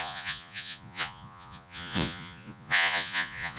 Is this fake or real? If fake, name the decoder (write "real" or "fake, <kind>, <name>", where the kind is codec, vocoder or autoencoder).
fake, vocoder, Vocos